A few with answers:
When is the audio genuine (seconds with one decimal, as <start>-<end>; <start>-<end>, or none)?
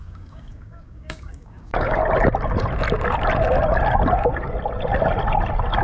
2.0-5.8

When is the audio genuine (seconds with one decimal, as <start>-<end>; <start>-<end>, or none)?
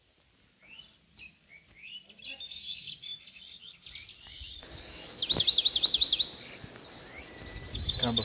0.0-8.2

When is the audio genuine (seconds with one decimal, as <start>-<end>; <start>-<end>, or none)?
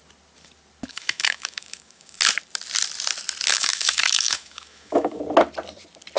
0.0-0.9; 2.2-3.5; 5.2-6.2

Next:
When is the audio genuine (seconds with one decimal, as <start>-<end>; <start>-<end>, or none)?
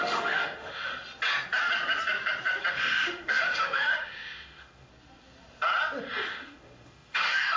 0.9-2.7; 4.9-6.3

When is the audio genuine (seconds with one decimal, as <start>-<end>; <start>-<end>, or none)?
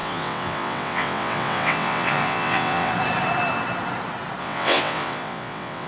2.9-4.4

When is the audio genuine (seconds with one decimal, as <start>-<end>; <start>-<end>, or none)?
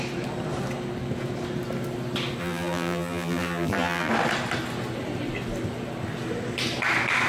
0.0-2.4; 4.1-7.3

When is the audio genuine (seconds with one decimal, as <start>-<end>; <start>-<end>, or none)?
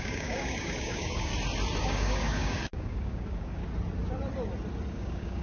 1.3-1.8; 3.6-4.9